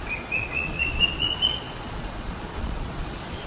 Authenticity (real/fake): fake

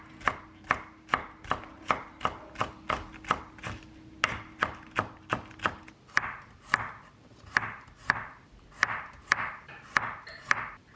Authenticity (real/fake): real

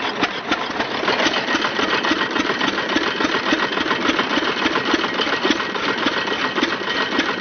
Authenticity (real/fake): real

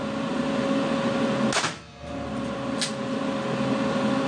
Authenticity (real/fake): real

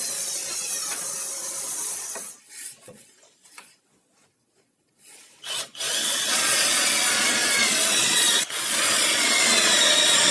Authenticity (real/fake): fake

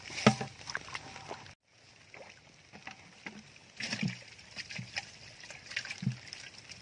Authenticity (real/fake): real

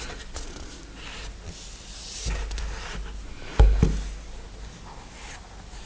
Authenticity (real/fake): real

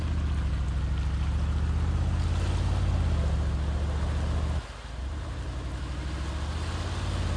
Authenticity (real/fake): real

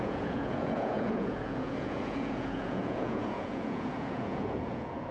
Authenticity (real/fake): fake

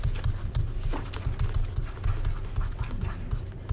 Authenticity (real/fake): real